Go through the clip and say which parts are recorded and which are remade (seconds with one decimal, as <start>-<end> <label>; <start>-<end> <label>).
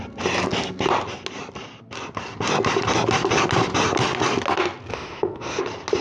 0.0-4.9 recorded; 4.9-5.6 remade; 5.6-6.0 recorded